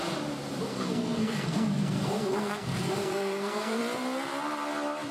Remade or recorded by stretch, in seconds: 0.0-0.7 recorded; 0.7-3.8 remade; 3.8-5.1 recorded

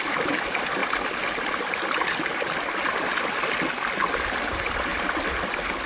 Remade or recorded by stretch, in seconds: 0.0-5.9 recorded

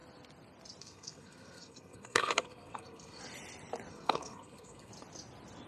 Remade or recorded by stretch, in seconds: 0.0-0.8 recorded; 0.8-3.2 remade; 3.2-3.9 recorded; 3.9-4.9 remade; 4.9-5.7 recorded

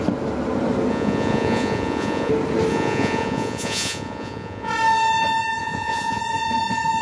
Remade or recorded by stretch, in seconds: 0.0-0.9 recorded; 0.9-2.3 remade; 2.3-2.7 recorded; 2.7-4.7 remade; 4.7-5.6 recorded; 5.6-6.2 remade; 6.2-7.0 recorded